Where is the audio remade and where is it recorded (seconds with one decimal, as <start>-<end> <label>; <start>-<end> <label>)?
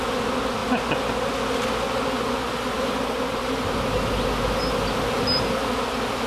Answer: 0.0-6.3 recorded